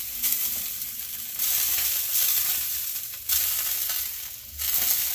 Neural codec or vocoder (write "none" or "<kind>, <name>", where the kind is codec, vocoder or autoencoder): none